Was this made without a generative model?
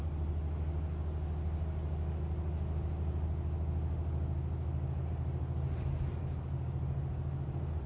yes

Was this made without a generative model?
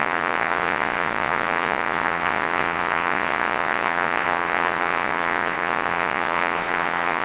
no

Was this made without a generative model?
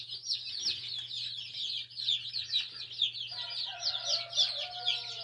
yes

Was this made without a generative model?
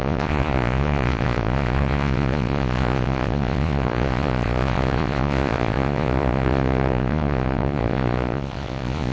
no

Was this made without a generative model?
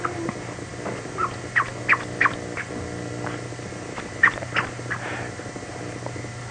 yes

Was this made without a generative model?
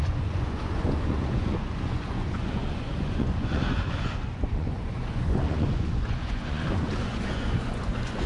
no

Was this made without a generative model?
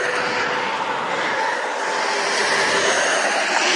yes